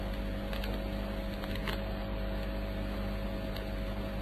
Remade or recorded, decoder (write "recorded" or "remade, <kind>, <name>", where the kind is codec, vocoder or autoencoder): recorded